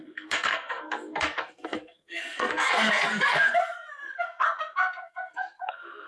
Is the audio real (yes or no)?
no